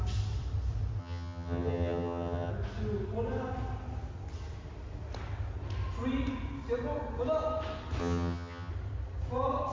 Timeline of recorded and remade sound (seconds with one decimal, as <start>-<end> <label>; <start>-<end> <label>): 0.0-1.0 recorded; 1.0-2.5 remade; 2.5-8.0 recorded; 8.0-8.7 remade; 8.7-9.7 recorded